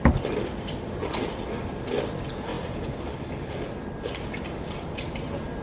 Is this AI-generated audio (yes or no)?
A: no